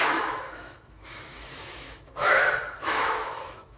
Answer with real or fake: fake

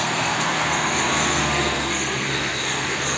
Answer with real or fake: fake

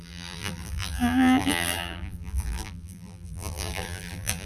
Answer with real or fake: fake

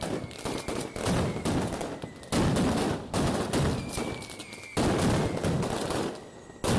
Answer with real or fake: real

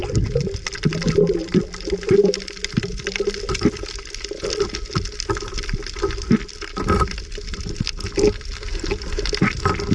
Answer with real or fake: real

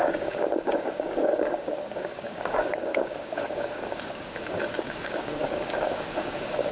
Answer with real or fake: fake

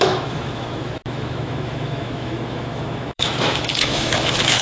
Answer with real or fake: fake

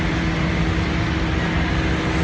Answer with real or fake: real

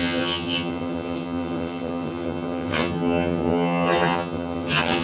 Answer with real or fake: fake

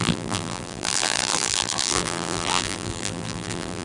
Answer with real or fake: fake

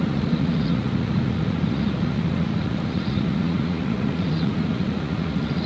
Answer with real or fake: fake